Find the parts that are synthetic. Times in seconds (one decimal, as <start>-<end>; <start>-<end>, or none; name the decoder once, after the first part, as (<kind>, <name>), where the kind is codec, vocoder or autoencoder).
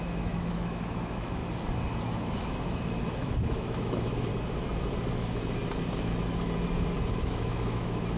0.0-1.4 (autoencoder, DAC-VAE); 2.0-4.3; 7.1-8.2